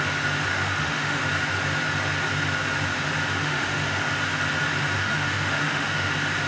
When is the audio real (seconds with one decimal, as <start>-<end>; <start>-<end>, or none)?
0.0-0.5; 1.2-3.4; 4.0-4.8; 6.1-6.5